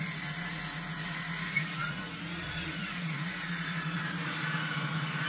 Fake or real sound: fake